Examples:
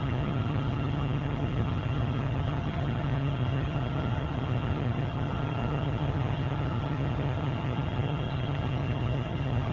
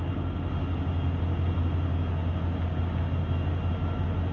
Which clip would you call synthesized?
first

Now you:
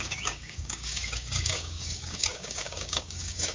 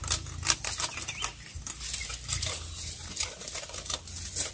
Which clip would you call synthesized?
first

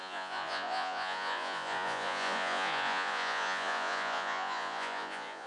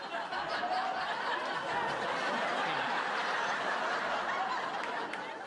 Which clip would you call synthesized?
first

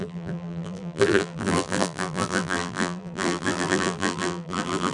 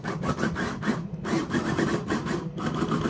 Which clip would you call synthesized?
first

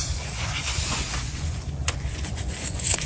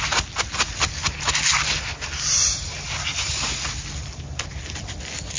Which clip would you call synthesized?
first